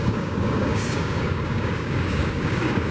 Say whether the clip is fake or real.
fake